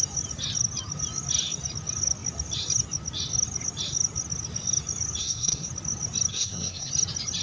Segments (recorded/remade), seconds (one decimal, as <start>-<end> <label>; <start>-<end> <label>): 0.0-5.2 recorded; 5.2-5.7 remade; 5.7-6.3 recorded; 6.3-6.9 remade; 6.9-7.4 recorded